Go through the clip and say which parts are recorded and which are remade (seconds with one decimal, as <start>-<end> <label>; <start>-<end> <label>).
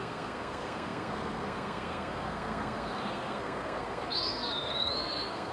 0.0-5.5 remade